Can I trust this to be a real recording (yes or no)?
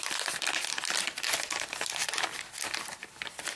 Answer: no